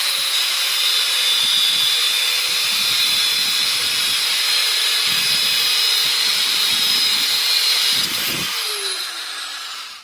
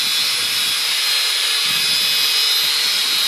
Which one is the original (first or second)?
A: second